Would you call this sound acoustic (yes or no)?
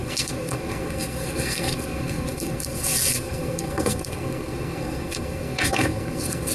no